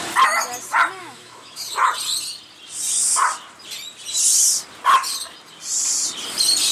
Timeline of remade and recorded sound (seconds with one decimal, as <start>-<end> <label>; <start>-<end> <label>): 0.0-1.0 recorded; 1.0-1.9 remade; 1.9-6.7 recorded